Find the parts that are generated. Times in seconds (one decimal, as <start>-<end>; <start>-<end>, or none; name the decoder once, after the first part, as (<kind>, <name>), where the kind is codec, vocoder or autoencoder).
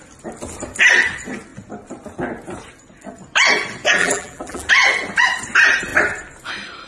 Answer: 4.0-4.7 (vocoder, BigVGAN v2)